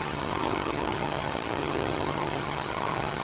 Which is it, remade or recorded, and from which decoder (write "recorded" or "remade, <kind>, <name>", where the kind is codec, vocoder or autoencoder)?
remade, vocoder, HiFi-GAN